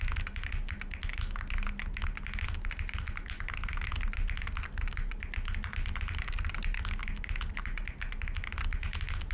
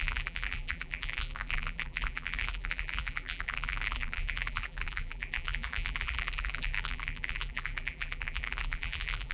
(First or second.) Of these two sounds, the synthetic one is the second